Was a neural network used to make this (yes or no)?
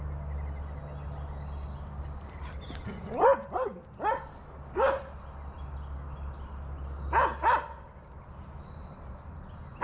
no